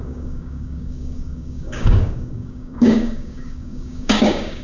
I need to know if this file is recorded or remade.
remade